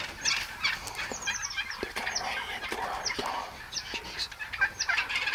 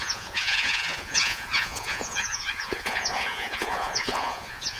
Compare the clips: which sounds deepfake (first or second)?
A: second